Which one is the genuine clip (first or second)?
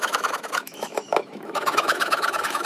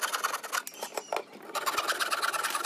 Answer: second